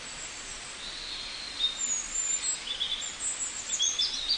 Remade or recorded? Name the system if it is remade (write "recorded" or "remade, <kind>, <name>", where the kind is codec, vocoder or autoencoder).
recorded